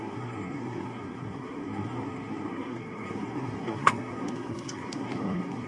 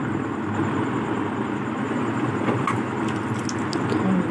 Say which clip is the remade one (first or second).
first